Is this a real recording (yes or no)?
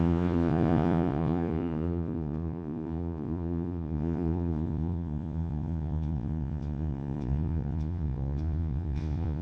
no